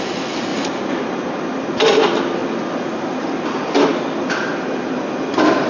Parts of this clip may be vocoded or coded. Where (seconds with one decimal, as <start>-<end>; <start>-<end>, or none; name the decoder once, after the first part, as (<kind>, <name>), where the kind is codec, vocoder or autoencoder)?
0.5-1.0 (vocoder, BigVGAN v2); 3.9-4.5